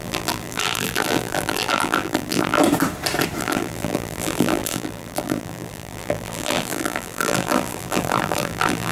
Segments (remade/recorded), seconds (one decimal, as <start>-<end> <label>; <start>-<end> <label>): 0.0-2.6 remade; 2.6-3.4 recorded; 3.4-8.9 remade

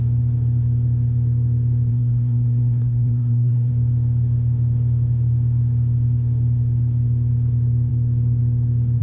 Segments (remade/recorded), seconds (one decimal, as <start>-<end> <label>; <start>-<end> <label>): 0.0-1.9 recorded; 1.9-3.7 remade; 3.7-9.0 recorded

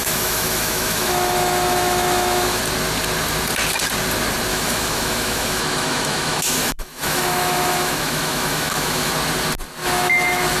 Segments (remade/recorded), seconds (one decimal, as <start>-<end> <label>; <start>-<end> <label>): 0.0-2.6 remade; 2.6-4.5 recorded; 4.5-9.1 remade; 9.1-9.8 recorded; 9.8-10.6 remade

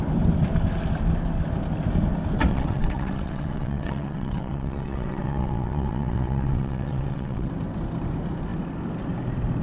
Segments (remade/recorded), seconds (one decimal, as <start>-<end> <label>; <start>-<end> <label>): 0.0-2.5 recorded; 2.5-7.5 remade; 7.5-9.6 recorded